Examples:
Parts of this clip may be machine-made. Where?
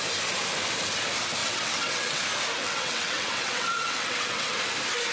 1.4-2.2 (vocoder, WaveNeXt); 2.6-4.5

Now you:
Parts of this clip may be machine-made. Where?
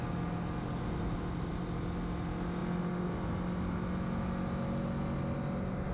none